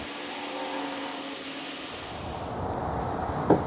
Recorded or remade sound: recorded